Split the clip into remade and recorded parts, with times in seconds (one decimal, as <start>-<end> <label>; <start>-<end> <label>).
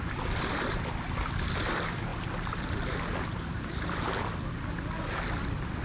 0.0-5.8 recorded